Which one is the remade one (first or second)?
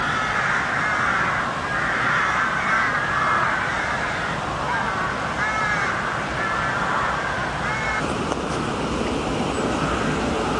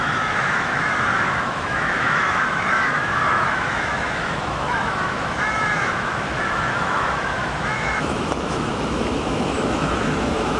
second